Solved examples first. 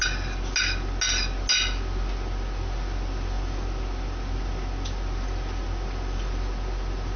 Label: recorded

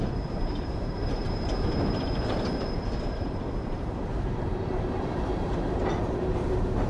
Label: remade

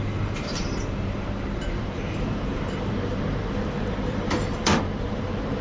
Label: remade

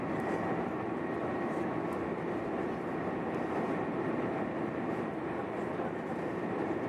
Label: remade